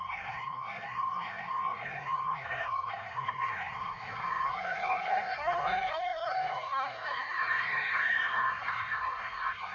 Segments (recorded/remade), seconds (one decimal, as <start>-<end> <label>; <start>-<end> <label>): 0.0-9.7 remade